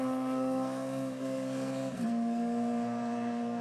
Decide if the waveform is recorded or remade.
remade